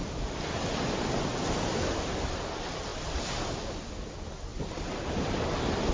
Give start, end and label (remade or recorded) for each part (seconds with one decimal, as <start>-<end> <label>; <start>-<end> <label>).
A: 0.0-5.9 recorded